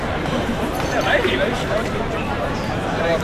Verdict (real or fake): fake